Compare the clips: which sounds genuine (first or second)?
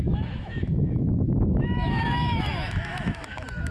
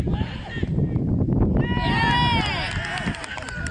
second